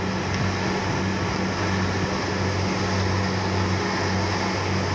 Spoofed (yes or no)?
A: no